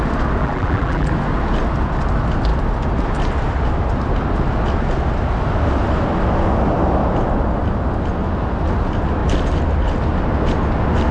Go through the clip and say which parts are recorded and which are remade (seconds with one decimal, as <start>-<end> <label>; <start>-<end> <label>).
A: 0.0-0.4 recorded; 0.4-1.1 remade; 1.1-11.1 recorded